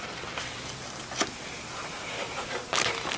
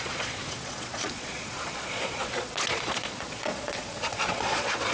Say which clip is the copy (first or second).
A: second